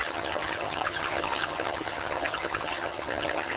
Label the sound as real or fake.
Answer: fake